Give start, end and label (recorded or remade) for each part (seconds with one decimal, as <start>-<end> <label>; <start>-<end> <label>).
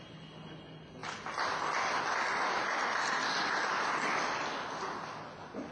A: 0.0-5.7 recorded